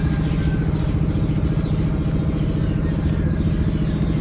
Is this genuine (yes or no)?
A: yes